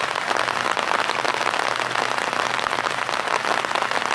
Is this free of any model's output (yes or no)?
yes